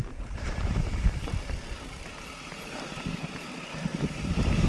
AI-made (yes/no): yes